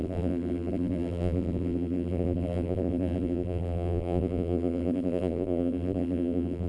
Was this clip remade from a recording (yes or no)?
yes